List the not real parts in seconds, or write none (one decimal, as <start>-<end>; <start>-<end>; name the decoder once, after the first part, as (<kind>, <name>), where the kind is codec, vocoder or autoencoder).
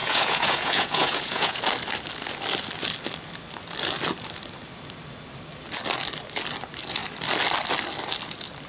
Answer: 0.0-1.6 (vocoder, Vocos)